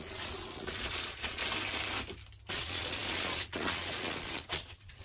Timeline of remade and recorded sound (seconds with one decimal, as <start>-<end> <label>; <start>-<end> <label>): 0.0-1.4 remade; 1.4-2.5 recorded; 2.5-5.0 remade